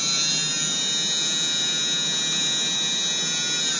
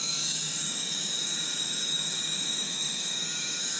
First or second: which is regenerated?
second